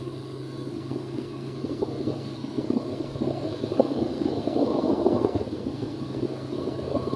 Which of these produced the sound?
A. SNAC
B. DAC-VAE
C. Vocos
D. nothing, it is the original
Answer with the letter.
A